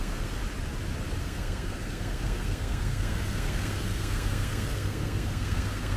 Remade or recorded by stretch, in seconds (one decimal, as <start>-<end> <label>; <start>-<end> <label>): 0.0-0.4 remade; 0.4-1.2 recorded; 1.2-6.0 remade